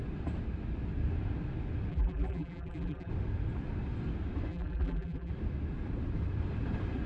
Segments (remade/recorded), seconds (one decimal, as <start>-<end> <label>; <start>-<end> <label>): 0.0-1.9 recorded; 1.9-3.1 remade; 3.1-4.5 recorded; 4.5-5.3 remade; 5.3-7.1 recorded